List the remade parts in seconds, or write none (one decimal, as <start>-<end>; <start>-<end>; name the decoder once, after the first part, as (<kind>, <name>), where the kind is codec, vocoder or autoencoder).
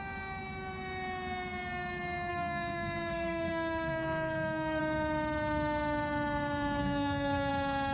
2.3-4.8 (codec, SNAC); 6.8-7.5